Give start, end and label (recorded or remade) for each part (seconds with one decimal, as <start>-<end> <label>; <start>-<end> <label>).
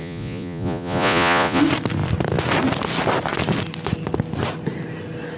0.0-1.6 remade; 1.6-5.4 recorded